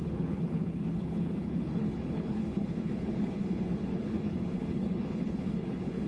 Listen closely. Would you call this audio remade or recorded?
remade